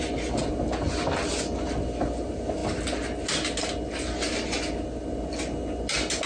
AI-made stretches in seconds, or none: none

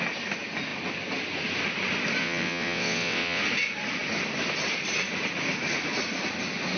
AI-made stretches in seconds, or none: 2.2-3.4 (vocoder, WaveNeXt)

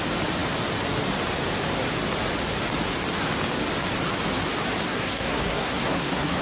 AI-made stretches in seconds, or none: 4.8-6.4 (codec, SNAC)